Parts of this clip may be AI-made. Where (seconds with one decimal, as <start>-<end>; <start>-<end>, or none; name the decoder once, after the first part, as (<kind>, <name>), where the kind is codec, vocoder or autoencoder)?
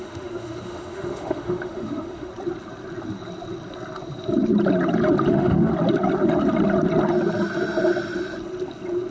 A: 0.0-2.3 (autoencoder, DAC-VAE); 5.3-5.7